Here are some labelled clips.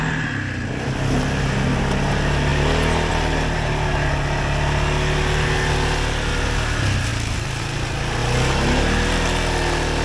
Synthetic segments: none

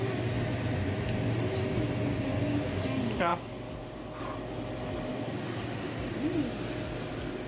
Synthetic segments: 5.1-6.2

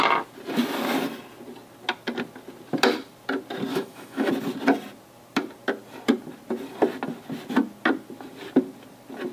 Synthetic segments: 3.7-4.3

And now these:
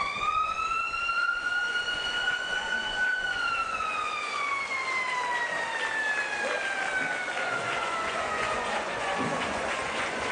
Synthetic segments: 0.0-4.8; 7.4-10.3